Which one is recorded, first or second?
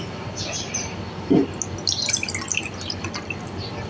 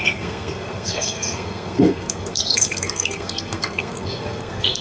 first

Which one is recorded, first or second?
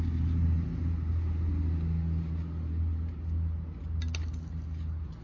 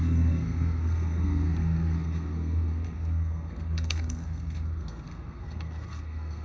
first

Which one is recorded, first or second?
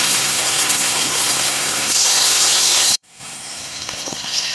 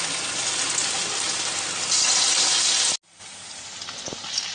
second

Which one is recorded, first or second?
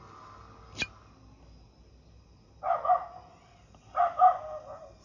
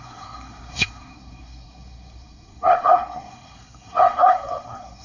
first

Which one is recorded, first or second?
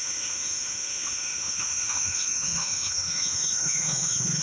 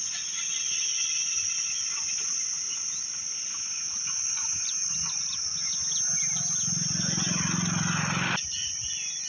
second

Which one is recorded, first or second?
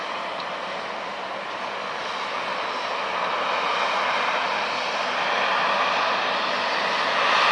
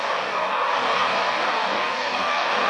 first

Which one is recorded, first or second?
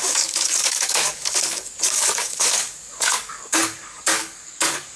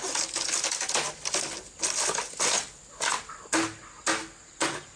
second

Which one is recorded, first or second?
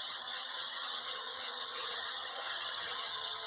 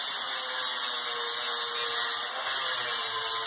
second